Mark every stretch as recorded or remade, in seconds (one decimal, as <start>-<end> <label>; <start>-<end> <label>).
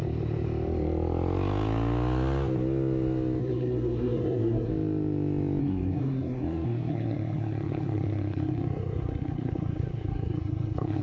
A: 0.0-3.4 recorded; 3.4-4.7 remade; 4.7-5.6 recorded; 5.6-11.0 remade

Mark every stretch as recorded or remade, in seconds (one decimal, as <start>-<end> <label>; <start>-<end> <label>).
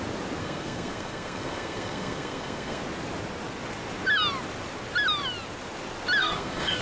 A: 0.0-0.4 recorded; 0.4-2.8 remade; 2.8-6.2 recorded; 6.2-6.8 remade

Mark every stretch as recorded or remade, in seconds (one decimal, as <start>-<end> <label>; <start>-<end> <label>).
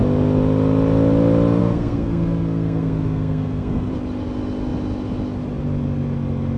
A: 0.0-1.6 recorded; 1.6-3.9 remade; 3.9-6.6 recorded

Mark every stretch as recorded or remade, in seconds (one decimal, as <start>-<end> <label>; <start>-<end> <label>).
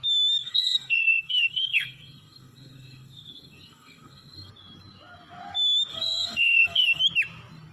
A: 0.0-0.4 recorded; 0.4-4.5 remade; 4.5-5.9 recorded; 5.9-7.0 remade; 7.0-7.7 recorded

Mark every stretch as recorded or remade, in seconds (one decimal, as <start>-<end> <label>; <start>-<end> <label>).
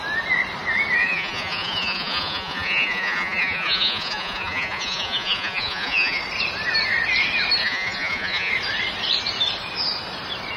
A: 0.0-1.0 recorded; 1.0-6.2 remade; 6.2-7.6 recorded; 7.6-8.5 remade; 8.5-10.6 recorded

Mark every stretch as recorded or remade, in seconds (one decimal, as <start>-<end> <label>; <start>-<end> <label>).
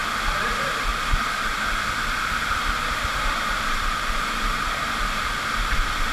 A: 0.0-0.9 recorded; 0.9-4.2 remade; 4.2-6.1 recorded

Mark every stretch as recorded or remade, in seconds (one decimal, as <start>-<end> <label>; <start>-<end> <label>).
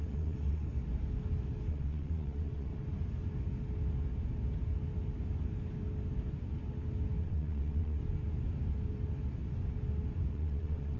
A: 0.0-0.7 remade; 0.7-1.7 recorded; 1.7-2.7 remade; 2.7-7.2 recorded; 7.2-8.0 remade; 8.0-10.3 recorded; 10.3-11.0 remade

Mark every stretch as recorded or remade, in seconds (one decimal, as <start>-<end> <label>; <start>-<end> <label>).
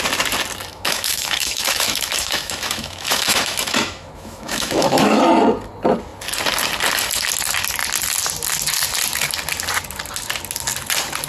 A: 0.0-0.7 recorded; 0.7-5.2 remade; 5.2-11.3 recorded